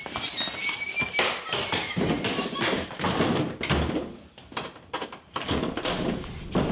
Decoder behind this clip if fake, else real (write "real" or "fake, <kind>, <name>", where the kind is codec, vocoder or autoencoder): real